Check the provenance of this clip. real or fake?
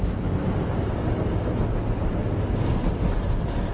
real